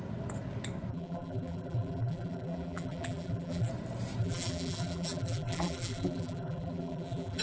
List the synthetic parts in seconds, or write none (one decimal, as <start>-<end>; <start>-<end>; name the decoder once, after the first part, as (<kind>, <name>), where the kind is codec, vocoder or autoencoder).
0.9-3.7 (vocoder, BigVGAN v2); 4.2-7.4

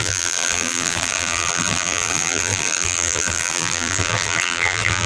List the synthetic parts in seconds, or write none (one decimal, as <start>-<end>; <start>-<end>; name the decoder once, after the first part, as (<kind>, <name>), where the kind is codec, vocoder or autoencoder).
0.0-5.1 (vocoder, BigVGAN v2)

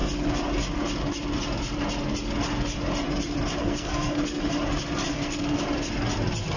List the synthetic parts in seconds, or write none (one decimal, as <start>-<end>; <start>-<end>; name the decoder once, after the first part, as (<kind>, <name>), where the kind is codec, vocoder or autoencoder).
3.6-4.4 (codec, SNAC); 5.1-5.6

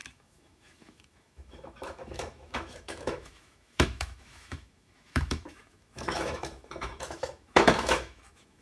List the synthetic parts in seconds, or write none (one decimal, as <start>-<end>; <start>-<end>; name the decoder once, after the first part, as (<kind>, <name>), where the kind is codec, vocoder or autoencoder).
0.0-8.6 (autoencoder, DAC-VAE)

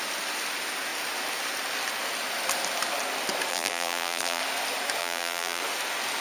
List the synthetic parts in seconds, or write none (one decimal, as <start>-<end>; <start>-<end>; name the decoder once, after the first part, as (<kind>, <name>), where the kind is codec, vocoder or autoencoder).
3.5-4.4 (vocoder, BigVGAN v2); 5.0-5.6

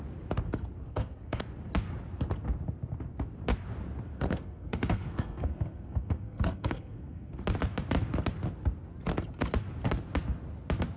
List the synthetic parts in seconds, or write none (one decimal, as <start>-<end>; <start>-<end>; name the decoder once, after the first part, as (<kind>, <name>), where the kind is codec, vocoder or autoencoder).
0.9-1.4 (codec, SNAC); 4.1-7.3

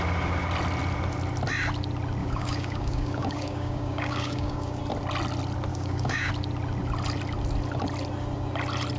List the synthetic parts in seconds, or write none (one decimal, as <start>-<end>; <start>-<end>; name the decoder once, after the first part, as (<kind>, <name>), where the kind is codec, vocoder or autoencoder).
2.2-4.8 (codec, DAC); 5.7-6.3

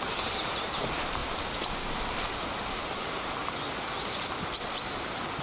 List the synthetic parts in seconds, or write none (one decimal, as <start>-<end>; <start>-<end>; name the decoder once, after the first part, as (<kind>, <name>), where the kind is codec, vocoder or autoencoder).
0.0-1.2 (vocoder, BigVGAN v2); 2.8-3.4; 4.5-5.4